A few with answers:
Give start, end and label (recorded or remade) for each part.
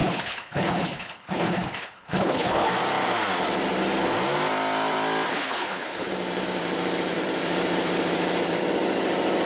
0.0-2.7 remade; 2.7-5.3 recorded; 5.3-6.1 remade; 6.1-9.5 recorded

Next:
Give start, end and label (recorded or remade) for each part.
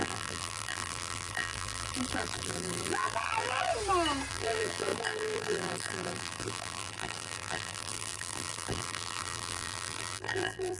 0.0-3.7 remade; 3.7-4.3 recorded; 4.3-10.8 remade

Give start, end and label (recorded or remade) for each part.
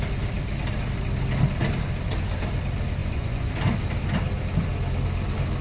0.0-3.0 recorded; 3.0-3.6 remade; 3.6-5.6 recorded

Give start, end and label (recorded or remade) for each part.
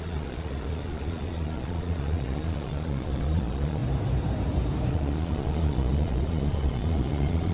0.0-3.8 remade; 3.8-4.9 recorded; 4.9-7.5 remade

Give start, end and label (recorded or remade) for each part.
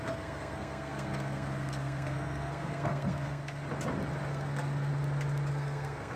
0.0-3.6 remade; 3.6-4.3 recorded; 4.3-4.9 remade; 4.9-5.5 recorded; 5.5-6.2 remade